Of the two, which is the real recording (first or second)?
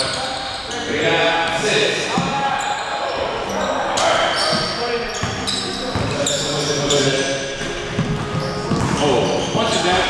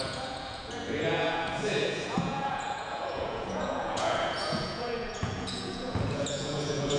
first